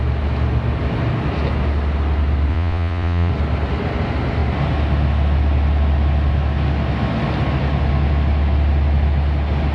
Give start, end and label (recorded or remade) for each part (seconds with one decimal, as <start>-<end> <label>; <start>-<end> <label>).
0.0-2.5 recorded; 2.5-3.3 remade; 3.3-9.7 recorded